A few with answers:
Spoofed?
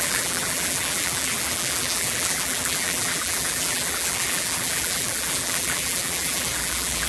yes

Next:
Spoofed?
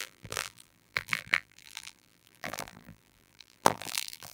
yes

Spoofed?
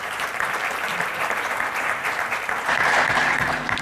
yes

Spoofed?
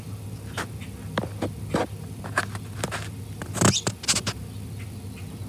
no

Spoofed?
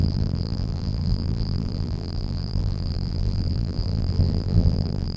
yes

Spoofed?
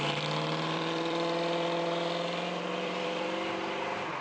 yes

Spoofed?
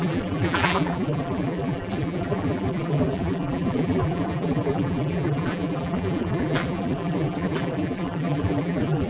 yes